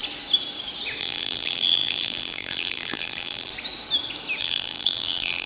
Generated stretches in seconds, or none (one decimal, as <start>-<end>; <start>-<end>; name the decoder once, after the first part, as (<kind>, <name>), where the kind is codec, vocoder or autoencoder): 1.0-3.5 (vocoder, BigVGAN v2); 4.4-5.5